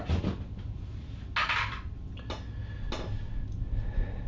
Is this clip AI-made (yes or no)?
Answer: no